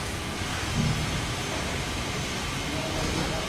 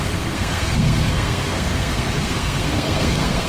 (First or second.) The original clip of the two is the first